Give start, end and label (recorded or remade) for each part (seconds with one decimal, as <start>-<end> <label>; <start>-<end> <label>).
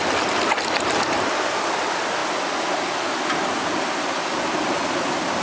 0.0-5.4 recorded